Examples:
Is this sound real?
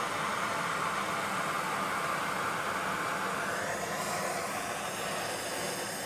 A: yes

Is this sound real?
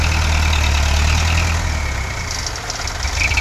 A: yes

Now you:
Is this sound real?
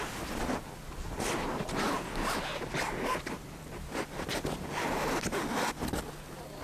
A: yes